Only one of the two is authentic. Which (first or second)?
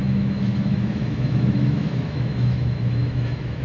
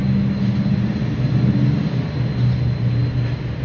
second